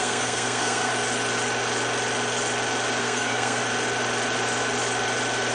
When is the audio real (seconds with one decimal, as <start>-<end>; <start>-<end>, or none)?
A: 0.9-3.0; 3.6-5.5